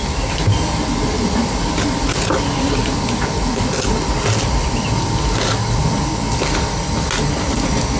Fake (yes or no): no